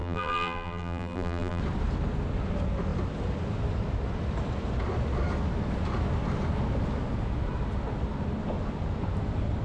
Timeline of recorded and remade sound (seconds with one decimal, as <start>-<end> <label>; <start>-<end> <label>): 0.0-1.6 remade; 1.6-9.6 recorded